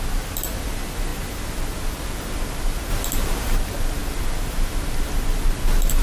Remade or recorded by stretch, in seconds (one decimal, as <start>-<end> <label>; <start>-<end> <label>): 0.0-6.0 recorded